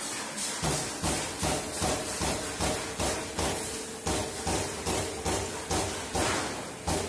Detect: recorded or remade recorded